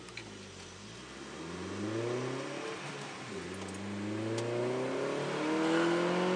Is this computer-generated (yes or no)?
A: no